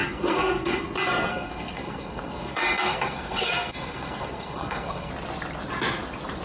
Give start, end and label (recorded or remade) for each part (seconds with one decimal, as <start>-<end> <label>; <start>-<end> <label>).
0.0-0.8 remade; 0.8-1.3 recorded; 1.3-5.1 remade; 5.1-6.4 recorded